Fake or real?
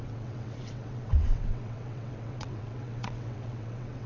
fake